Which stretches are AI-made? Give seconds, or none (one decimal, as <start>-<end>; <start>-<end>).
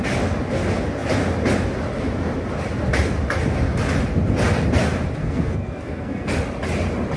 5.2-6.3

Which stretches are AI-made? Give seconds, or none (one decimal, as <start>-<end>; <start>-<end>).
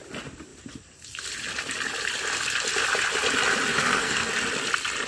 3.7-4.3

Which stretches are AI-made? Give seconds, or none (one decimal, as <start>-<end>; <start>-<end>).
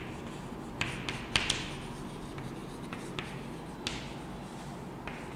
none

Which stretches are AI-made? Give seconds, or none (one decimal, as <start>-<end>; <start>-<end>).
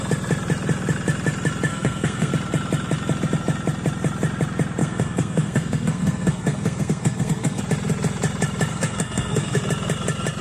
1.7-2.3; 4.8-7.6; 8.7-9.6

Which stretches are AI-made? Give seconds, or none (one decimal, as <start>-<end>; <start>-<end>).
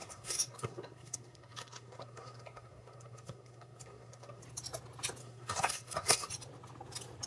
0.0-4.4; 5.2-6.3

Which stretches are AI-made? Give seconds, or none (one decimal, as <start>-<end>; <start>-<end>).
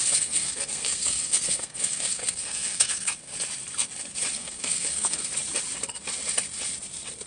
0.0-3.3; 4.3-5.3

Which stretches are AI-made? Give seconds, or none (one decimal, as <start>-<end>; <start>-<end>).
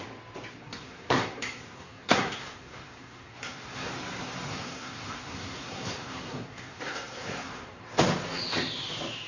0.5-3.9; 4.5-7.8